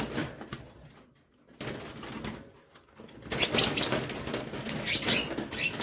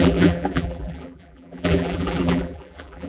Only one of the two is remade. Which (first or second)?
second